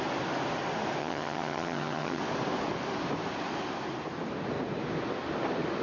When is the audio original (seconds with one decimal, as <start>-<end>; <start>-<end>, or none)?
0.0-1.0; 2.2-5.8